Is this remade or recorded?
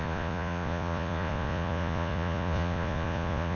remade